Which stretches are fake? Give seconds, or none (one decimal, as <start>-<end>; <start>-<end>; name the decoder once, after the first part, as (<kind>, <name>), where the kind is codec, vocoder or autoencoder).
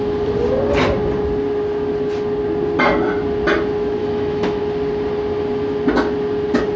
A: 4.0-4.6 (autoencoder, DAC-VAE)